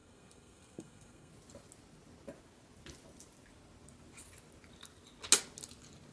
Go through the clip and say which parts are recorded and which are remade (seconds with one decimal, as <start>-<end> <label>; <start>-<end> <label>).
0.0-1.3 remade; 1.3-6.1 recorded